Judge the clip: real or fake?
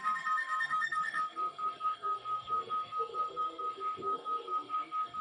fake